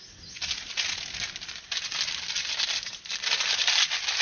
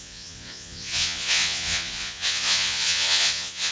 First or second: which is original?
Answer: first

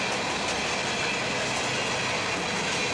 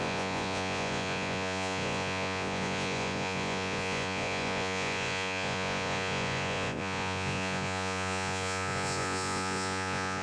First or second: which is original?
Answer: first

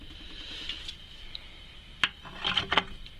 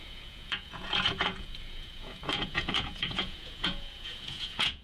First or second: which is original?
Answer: first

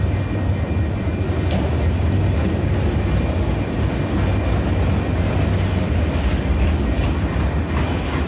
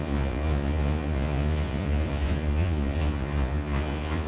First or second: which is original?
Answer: first